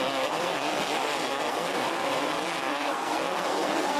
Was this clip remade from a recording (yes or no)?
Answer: yes